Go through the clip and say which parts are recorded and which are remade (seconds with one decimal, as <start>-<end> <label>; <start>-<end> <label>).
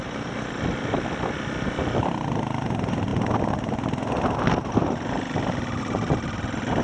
0.0-6.8 recorded